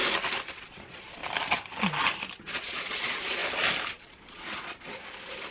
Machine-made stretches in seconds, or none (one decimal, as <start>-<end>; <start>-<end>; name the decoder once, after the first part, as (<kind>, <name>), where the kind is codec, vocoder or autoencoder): 0.5-1.2 (vocoder, Vocos); 2.4-3.4; 3.9-5.5

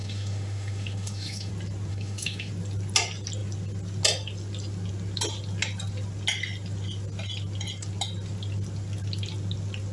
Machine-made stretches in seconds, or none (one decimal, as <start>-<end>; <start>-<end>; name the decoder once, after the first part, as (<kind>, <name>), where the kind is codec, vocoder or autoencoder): 0.0-1.5 (autoencoder, DAC-VAE); 1.9-2.5

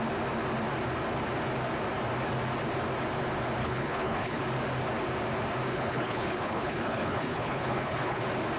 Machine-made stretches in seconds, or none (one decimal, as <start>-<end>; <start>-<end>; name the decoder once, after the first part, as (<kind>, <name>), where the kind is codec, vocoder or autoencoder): 3.6-4.4 (codec, HILCodec); 5.7-8.2

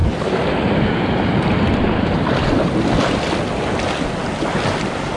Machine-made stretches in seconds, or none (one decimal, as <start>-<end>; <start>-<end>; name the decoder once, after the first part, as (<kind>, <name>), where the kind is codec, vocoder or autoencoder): none

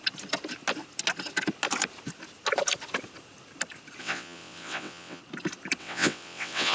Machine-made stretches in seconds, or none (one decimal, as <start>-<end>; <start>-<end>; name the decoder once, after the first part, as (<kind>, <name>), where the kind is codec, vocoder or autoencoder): 4.0-5.2 (vocoder, WaveNeXt); 5.8-6.7

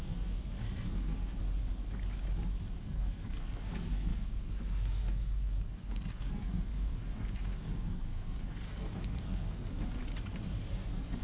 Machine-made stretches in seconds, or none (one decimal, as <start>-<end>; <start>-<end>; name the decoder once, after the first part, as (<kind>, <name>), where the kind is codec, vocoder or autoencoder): 0.0-1.4 (codec, SNAC); 2.8-10.0; 10.7-11.2